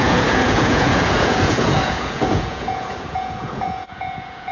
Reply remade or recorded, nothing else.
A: remade